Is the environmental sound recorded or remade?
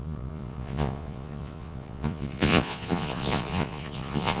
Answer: remade